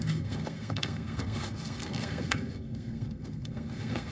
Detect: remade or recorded remade